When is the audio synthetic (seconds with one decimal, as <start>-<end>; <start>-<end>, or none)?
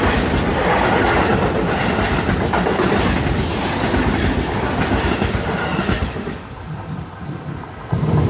none